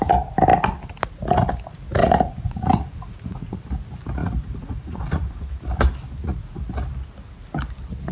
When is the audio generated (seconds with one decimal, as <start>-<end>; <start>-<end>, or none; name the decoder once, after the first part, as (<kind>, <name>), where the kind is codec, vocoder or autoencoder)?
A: 2.0-3.6 (vocoder, Vocos); 4.2-5.4; 6.2-6.7